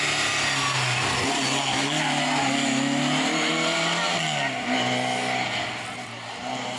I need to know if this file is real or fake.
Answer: real